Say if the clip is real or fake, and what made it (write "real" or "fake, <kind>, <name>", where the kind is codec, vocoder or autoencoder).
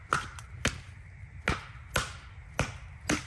real